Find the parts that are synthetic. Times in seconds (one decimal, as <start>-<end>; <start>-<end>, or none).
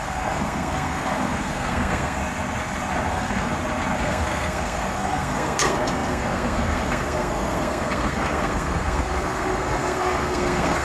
0.0-2.2; 3.1-3.5; 4.0-10.8